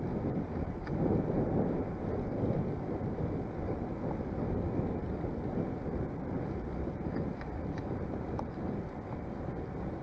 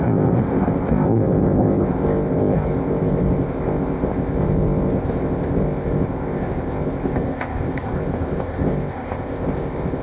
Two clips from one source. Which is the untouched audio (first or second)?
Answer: first